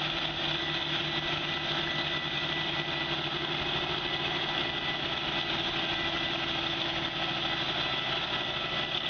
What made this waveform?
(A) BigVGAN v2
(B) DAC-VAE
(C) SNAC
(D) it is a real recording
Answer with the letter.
D